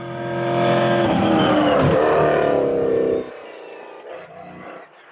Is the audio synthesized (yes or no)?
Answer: no